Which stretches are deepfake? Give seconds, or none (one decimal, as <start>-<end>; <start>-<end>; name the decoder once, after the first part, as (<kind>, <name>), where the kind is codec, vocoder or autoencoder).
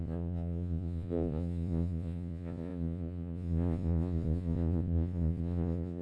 0.0-6.0 (vocoder, Vocos)